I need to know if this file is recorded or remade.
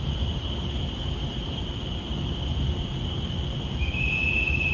recorded